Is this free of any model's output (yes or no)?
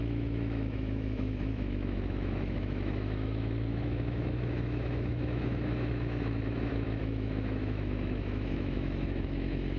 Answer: no